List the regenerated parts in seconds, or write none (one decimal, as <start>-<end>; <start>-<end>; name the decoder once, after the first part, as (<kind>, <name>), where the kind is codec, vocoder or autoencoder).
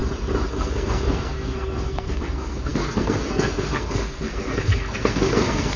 0.5-5.8 (codec, SNAC)